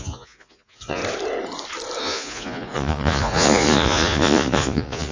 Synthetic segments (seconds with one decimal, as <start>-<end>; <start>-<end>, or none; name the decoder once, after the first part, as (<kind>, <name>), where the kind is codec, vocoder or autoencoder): 0.0-1.0 (vocoder, Vocos); 2.0-5.1